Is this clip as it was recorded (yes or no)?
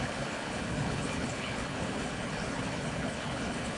no